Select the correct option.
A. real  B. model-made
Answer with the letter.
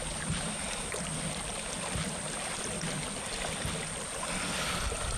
A